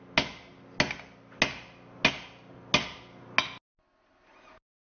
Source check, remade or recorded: recorded